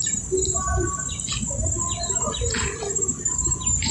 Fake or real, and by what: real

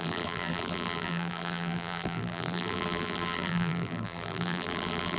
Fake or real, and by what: fake, vocoder, BigVGAN v2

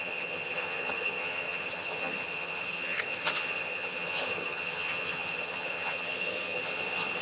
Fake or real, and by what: fake, vocoder, HiFi-GAN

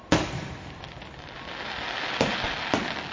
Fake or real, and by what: real